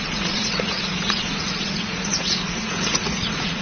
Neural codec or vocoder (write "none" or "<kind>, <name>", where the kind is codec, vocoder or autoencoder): vocoder, Vocos